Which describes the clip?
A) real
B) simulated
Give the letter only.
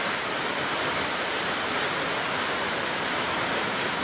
B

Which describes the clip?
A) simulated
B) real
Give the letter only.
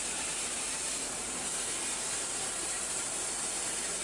A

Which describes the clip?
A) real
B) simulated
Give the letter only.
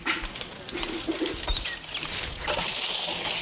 A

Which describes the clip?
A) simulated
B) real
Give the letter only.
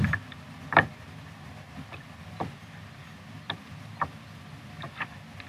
A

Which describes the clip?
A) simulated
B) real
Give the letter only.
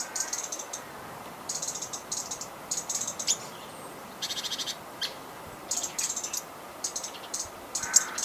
A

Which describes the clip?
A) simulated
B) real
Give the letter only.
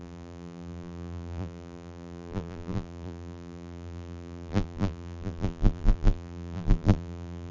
A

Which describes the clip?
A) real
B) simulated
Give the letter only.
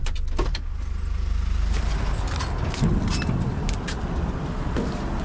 A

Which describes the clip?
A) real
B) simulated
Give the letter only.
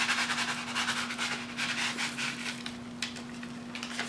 A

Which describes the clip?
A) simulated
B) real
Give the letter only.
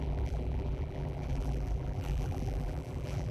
A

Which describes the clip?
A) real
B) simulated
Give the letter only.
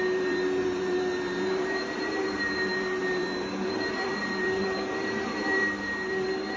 B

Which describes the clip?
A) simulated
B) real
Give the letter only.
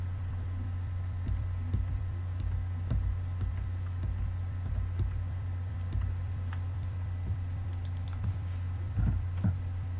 A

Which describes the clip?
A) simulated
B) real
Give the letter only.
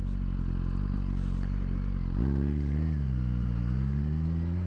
B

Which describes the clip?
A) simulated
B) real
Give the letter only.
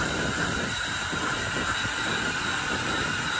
A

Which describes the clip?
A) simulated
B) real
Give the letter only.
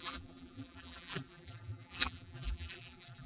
A